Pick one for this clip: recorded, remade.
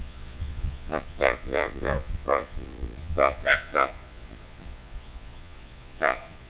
remade